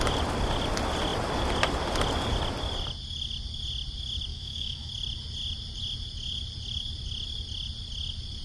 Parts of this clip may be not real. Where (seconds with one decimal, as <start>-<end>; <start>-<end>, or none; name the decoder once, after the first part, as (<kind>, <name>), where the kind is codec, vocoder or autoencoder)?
4.3-4.9 (autoencoder, DAC-VAE)